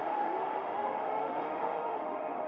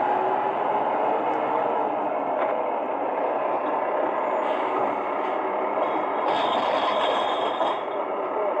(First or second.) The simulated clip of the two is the first